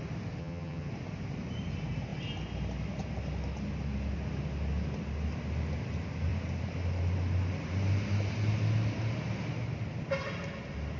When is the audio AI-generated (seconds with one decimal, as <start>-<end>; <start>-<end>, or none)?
0.4-0.9